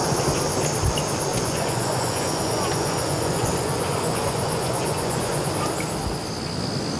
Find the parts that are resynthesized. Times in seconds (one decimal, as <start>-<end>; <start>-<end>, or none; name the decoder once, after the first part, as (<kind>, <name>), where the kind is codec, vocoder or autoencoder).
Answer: 1.3-5.5 (vocoder, Vocos)